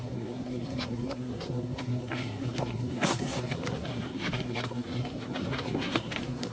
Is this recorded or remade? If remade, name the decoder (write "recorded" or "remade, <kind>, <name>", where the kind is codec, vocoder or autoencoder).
remade, codec, SNAC